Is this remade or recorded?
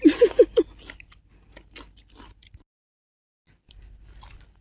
recorded